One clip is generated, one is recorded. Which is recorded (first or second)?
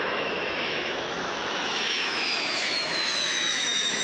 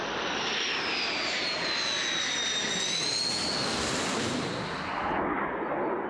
second